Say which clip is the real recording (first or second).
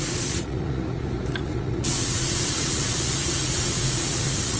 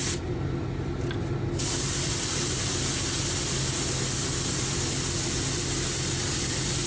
second